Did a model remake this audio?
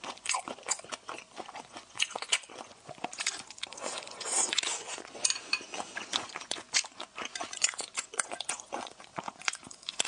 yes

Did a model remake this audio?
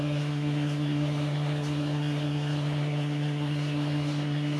yes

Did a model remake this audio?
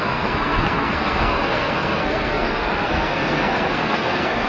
yes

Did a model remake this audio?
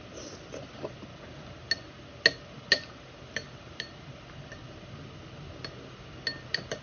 no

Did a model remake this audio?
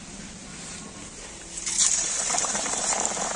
yes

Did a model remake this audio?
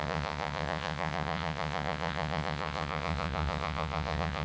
yes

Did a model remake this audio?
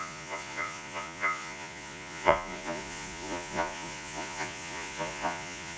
yes